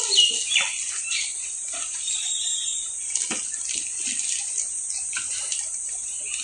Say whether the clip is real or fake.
real